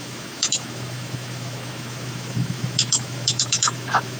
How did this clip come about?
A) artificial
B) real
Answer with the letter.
A